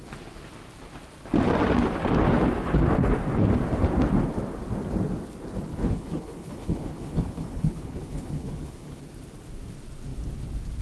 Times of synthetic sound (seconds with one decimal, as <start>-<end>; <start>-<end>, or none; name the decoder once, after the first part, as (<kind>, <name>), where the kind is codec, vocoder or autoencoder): 5.7-9.0 (codec, HILCodec)